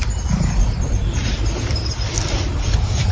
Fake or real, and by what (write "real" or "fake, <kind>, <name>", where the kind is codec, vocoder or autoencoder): fake, vocoder, BigVGAN v2